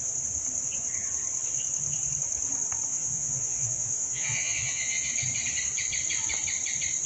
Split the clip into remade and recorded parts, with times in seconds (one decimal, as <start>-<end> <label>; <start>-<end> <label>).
0.0-2.9 recorded; 2.9-5.1 remade; 5.1-7.1 recorded